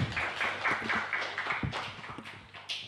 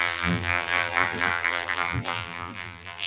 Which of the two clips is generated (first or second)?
second